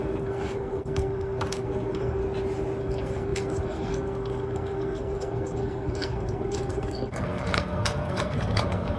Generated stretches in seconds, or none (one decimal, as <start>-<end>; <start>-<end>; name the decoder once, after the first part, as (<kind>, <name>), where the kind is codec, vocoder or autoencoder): 0.0-2.2 (codec, SNAC); 2.8-9.0